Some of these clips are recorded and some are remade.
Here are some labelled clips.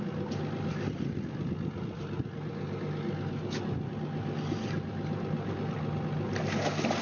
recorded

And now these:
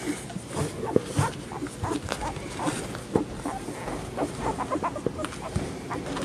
recorded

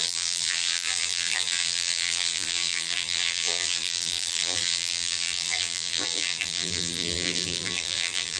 remade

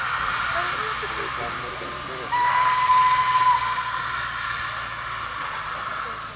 recorded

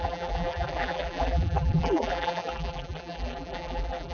remade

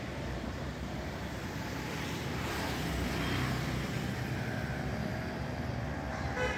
remade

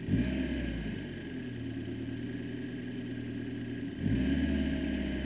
recorded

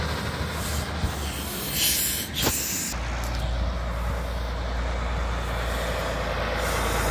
recorded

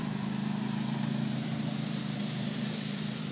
remade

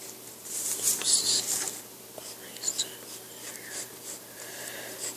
remade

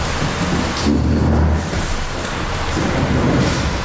recorded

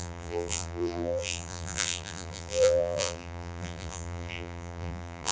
remade